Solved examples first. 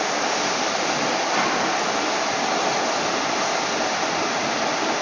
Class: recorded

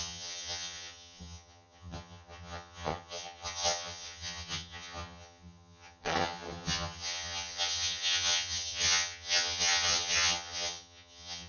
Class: remade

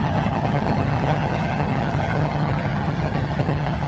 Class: remade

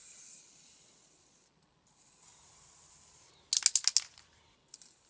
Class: recorded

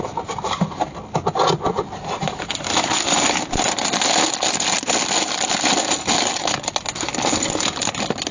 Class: recorded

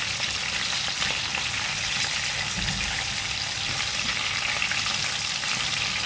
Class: recorded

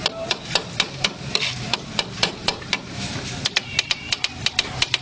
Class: recorded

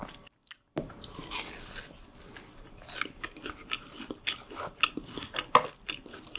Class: recorded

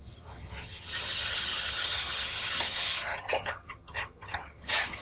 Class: remade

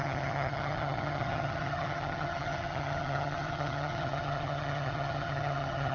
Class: remade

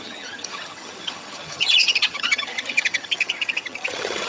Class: remade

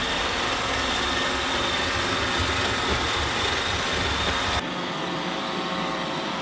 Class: recorded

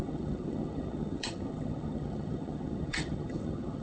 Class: remade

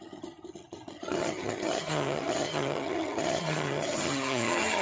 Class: remade